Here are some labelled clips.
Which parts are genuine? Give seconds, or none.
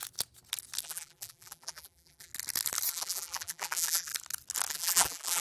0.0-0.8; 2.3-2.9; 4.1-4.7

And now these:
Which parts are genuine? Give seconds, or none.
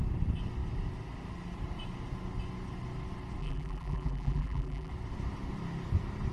0.0-3.4; 4.9-6.3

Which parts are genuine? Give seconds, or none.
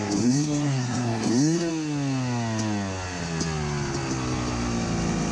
1.7-5.3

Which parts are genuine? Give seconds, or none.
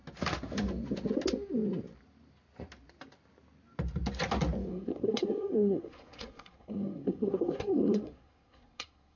0.0-4.7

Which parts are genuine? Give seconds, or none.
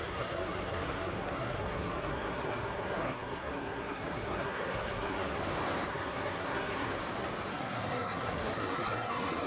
5.4-5.9; 6.9-7.5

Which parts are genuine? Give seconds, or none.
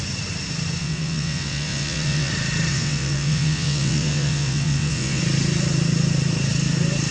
0.0-0.8; 2.3-2.7; 5.2-7.1